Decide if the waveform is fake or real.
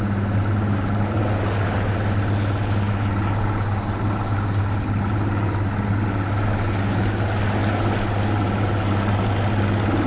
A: real